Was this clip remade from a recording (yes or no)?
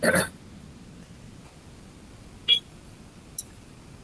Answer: no